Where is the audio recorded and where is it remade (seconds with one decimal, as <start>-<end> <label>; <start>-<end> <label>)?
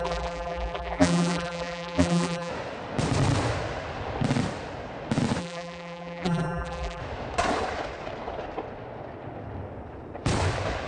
0.0-2.5 remade; 2.5-5.4 recorded; 5.4-7.0 remade; 7.0-10.9 recorded